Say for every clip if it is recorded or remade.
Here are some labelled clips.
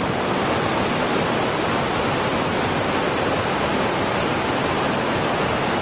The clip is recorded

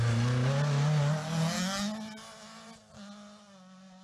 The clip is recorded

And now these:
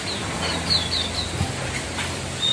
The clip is recorded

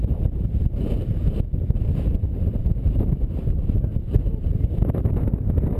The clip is remade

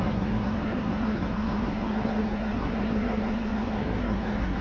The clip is remade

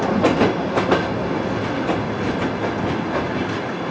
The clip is recorded